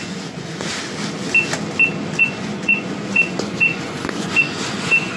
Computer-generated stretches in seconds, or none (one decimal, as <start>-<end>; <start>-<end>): 0.0-0.7; 2.2-5.2